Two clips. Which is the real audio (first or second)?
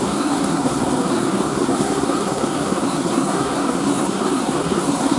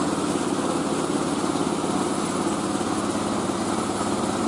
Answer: second